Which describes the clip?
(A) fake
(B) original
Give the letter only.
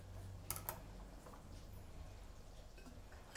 B